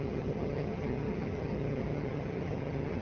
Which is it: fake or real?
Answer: fake